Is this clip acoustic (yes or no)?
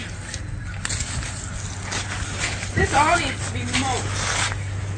yes